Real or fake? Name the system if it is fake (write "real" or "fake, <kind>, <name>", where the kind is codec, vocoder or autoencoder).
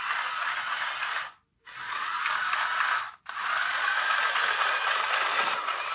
real